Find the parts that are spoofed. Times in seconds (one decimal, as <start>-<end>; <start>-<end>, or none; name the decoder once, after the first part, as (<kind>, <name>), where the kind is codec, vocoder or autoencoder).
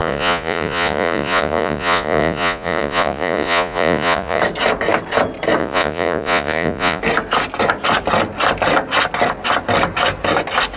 0.0-4.4 (vocoder, Vocos); 5.6-7.0